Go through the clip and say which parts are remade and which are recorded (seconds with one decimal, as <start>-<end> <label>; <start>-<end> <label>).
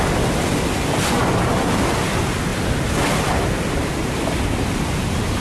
0.0-5.4 recorded